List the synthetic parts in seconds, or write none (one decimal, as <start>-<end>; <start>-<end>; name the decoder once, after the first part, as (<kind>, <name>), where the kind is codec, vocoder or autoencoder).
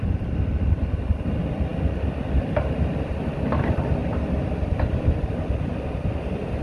none